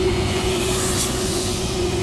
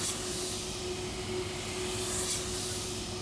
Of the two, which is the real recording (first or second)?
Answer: second